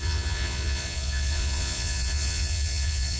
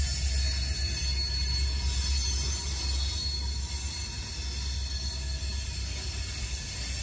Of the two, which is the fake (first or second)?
first